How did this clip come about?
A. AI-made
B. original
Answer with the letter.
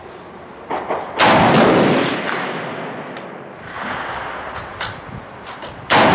B